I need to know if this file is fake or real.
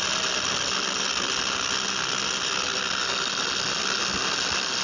real